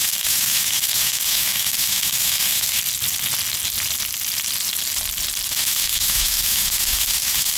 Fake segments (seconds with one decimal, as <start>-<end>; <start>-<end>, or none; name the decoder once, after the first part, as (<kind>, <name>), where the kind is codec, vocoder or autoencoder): 0.0-2.8 (autoencoder, DAC-VAE); 5.5-7.6

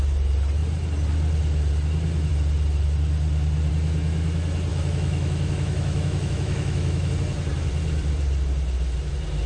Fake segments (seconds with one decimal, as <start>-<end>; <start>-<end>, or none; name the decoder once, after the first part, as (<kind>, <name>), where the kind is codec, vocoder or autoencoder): 4.7-7.1 (autoencoder, DAC-VAE)

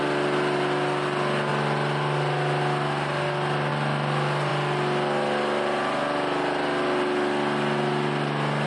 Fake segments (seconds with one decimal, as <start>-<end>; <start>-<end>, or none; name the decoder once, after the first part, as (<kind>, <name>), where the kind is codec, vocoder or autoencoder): none